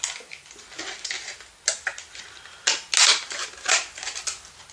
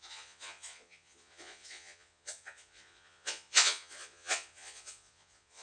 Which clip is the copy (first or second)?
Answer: second